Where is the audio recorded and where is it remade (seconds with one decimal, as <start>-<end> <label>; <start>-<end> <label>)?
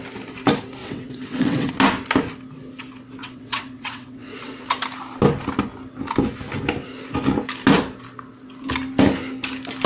0.0-0.8 recorded; 0.8-1.7 remade; 1.7-3.2 recorded; 3.2-4.6 remade; 4.6-9.9 recorded